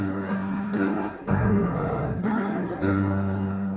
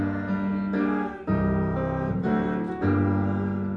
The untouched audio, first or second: second